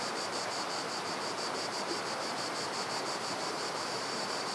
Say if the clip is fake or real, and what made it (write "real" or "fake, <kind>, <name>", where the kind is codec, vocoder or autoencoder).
fake, vocoder, BigVGAN v2